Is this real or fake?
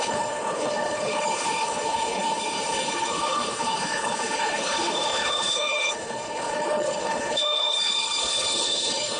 fake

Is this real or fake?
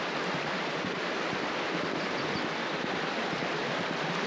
real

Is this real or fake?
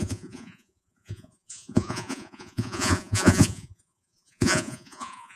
fake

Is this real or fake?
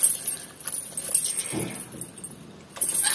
real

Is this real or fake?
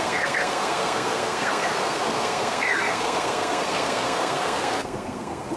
fake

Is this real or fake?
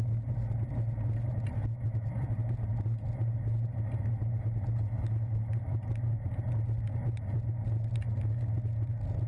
real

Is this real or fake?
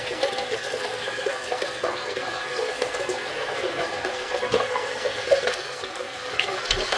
fake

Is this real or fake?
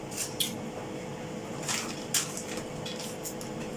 real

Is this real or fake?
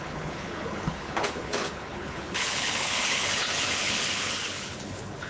fake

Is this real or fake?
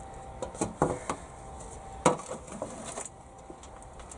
real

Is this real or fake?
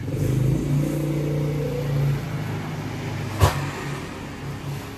real